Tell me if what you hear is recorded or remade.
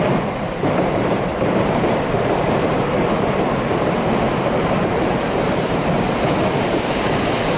remade